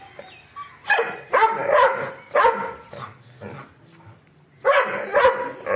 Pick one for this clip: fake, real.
real